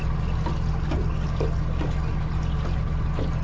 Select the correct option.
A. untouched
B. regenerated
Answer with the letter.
A